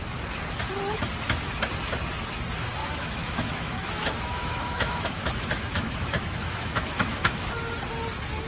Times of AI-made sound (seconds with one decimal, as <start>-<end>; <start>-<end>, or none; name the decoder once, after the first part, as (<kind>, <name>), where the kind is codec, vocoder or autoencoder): 2.8-7.5 (autoencoder, DAC-VAE)